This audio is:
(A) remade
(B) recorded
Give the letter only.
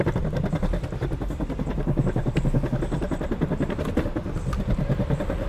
B